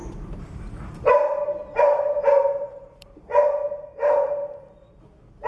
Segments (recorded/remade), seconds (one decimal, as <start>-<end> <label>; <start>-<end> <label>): 0.0-3.3 remade; 3.3-5.5 recorded